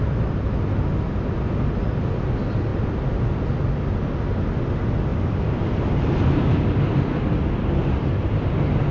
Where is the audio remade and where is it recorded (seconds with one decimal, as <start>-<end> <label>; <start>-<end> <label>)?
0.0-5.1 recorded; 5.1-5.8 remade; 5.8-7.8 recorded; 7.8-8.3 remade; 8.3-8.9 recorded

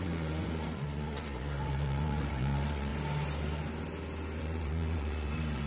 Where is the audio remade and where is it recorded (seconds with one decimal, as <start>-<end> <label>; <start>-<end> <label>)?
0.0-2.9 remade; 2.9-4.4 recorded; 4.4-5.7 remade

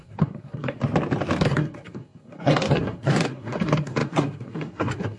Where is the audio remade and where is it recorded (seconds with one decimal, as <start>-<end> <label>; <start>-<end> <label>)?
0.0-0.8 remade; 0.8-1.4 recorded; 1.4-5.2 remade